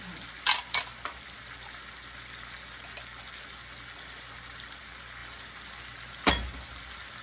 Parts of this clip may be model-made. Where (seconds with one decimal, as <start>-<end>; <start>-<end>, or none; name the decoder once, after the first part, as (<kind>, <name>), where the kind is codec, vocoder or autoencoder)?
none